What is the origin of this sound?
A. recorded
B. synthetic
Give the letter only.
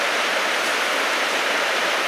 A